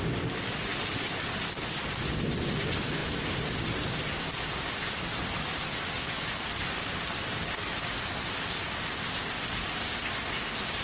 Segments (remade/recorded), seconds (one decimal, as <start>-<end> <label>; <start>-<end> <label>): 0.0-3.0 recorded; 3.0-4.2 remade; 4.2-10.8 recorded